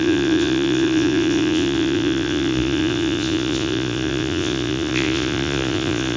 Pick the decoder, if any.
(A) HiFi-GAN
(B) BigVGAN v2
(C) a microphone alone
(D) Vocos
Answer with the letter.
D